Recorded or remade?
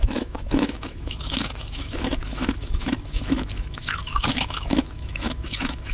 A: remade